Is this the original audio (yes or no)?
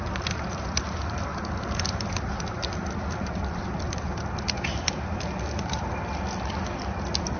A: yes